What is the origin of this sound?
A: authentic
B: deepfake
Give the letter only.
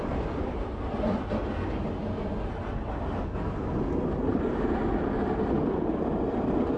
A